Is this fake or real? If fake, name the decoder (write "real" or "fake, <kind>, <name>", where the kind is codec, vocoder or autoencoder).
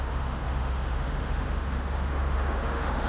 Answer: fake, autoencoder, DAC-VAE